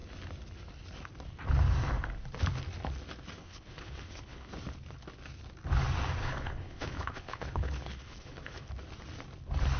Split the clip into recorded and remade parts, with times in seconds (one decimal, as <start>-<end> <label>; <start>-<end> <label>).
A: 0.0-3.4 recorded; 3.4-4.5 remade; 4.5-6.2 recorded; 6.2-8.7 remade; 8.7-9.8 recorded